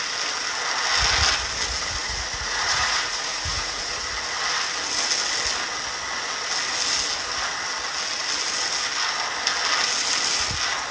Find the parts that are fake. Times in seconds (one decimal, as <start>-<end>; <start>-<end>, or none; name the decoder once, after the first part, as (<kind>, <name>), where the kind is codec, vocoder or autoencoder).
2.0-3.9 (vocoder, Vocos)